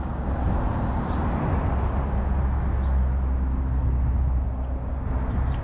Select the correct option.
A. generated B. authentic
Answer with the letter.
B